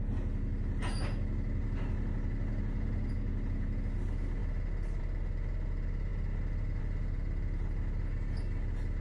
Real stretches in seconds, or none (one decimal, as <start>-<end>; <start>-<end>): 0.0-9.0